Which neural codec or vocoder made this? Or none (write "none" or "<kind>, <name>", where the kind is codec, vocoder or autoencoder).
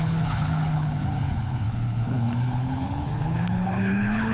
codec, HILCodec